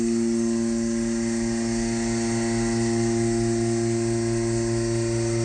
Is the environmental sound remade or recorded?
recorded